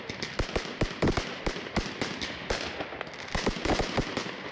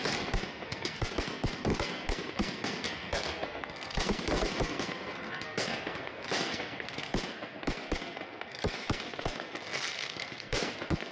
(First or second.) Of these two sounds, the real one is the first